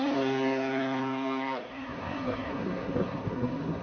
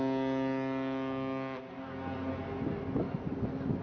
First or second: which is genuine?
second